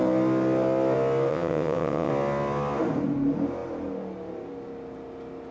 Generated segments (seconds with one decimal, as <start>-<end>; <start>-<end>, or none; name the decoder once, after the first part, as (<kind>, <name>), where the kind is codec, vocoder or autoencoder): 1.3-2.1 (vocoder, WaveNeXt)